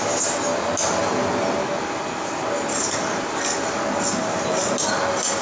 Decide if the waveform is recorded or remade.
recorded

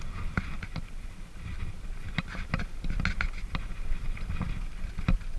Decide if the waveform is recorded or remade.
recorded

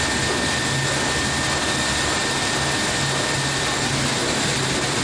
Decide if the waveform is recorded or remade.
recorded